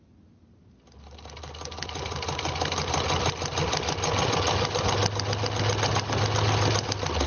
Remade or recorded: recorded